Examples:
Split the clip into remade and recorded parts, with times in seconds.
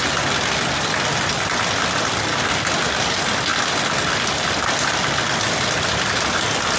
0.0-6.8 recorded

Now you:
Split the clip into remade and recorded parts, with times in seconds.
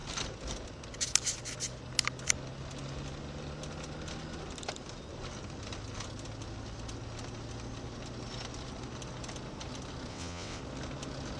0.0-10.1 recorded; 10.1-10.6 remade; 10.6-11.4 recorded